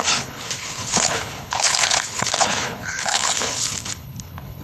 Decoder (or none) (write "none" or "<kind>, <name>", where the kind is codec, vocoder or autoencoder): codec, HILCodec